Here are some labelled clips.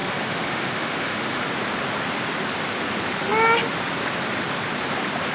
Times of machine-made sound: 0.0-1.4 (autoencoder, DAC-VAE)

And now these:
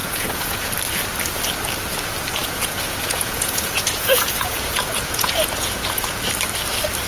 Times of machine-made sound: 0.0-0.7 (vocoder, Vocos); 2.4-6.1

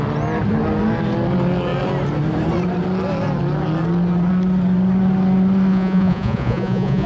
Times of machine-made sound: 5.7-7.1 (vocoder, Vocos)